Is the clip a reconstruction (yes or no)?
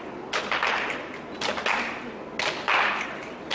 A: no